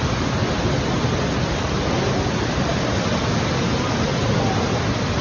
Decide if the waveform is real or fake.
real